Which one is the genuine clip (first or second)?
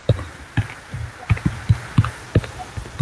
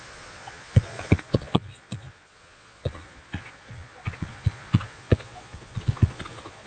first